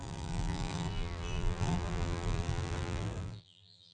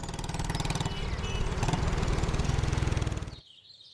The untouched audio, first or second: second